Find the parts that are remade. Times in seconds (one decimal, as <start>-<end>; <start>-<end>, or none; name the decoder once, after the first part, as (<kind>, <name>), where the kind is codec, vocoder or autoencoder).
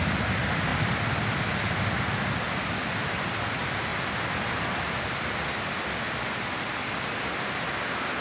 0.7-3.4 (vocoder, BigVGAN v2); 3.9-4.5